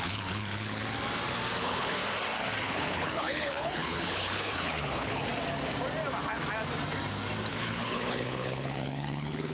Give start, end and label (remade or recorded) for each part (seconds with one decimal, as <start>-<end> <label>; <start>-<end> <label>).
0.0-0.8 remade; 0.8-1.6 recorded; 1.6-2.0 remade; 2.0-2.6 recorded; 2.6-5.3 remade; 5.3-7.5 recorded; 7.5-9.5 remade